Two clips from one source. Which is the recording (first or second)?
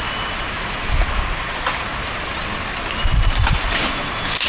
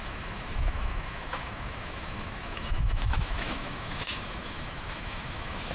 first